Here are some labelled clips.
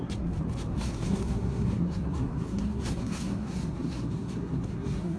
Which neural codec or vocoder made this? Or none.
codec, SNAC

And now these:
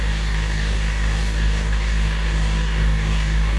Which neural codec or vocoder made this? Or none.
codec, DAC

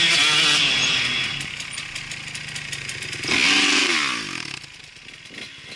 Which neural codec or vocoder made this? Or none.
none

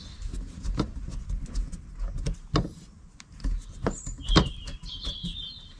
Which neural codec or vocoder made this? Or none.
none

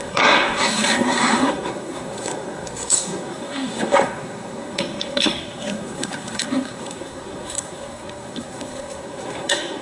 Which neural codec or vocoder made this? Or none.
codec, SNAC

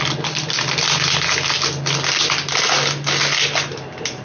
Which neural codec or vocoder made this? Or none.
none